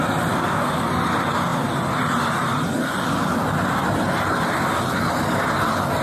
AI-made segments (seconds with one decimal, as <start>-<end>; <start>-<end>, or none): none